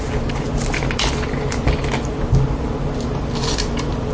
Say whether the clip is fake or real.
real